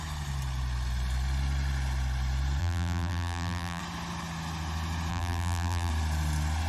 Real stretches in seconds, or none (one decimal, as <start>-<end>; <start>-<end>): 0.0-2.6; 3.8-5.1; 5.9-6.7

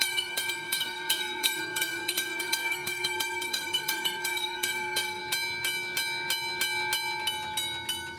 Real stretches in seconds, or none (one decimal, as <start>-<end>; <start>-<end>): 5.2-8.2

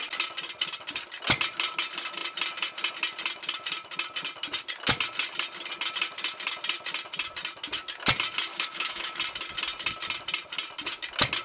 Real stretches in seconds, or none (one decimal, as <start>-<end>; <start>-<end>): 0.0-8.5; 9.2-11.4